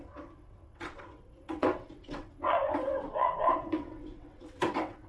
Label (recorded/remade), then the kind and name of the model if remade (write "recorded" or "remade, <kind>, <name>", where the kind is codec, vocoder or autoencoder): remade, vocoder, WaveNeXt